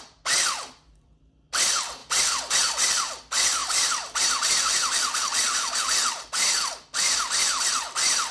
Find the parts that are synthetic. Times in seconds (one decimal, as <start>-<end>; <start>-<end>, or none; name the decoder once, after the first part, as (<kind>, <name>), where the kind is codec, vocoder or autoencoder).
none